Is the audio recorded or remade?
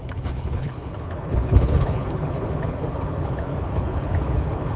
remade